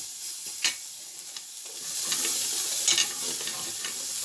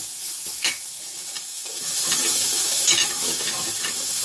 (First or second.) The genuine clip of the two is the first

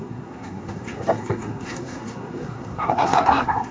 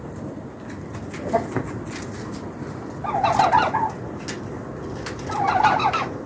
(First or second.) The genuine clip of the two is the second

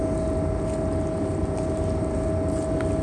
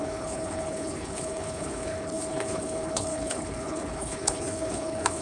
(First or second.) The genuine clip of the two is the first